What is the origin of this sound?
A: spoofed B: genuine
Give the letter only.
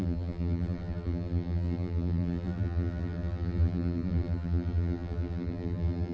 A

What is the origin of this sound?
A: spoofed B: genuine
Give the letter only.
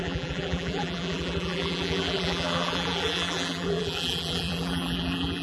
A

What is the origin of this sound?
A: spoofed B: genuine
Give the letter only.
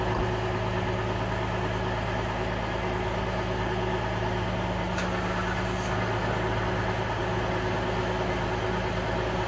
B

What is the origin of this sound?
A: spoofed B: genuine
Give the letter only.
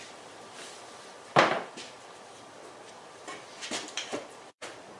A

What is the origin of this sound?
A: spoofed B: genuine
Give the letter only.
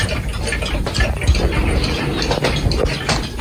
B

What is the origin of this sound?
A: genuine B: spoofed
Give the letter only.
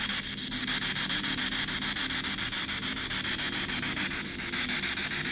A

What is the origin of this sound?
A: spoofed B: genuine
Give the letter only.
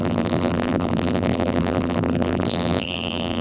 A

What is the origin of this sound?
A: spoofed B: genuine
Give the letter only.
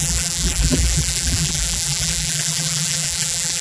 A